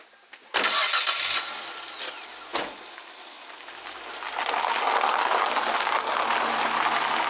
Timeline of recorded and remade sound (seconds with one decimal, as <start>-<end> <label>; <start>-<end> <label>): 0.0-7.3 recorded